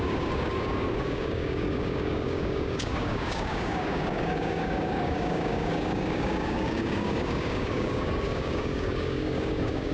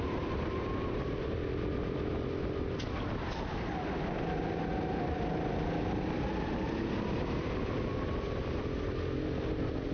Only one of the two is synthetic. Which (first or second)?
first